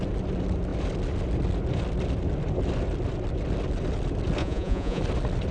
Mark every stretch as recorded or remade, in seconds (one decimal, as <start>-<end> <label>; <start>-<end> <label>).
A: 0.0-4.4 recorded; 4.4-5.0 remade; 5.0-5.5 recorded